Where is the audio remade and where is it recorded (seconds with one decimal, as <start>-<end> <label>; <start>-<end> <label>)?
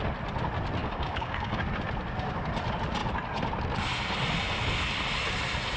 0.0-0.8 recorded; 0.8-1.6 remade; 1.6-5.8 recorded